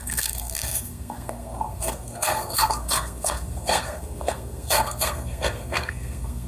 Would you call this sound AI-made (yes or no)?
yes